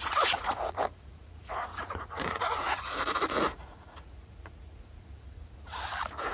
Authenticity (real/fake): fake